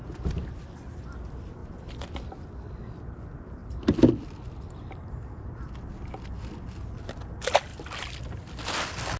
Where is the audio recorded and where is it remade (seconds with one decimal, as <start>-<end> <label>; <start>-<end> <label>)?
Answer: 0.0-9.2 recorded